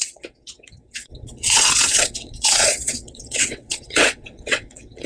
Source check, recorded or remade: remade